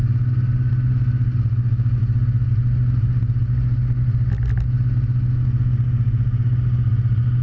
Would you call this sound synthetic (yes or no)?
no